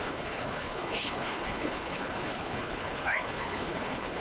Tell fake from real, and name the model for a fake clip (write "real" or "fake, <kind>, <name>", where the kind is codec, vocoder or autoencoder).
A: fake, codec, HILCodec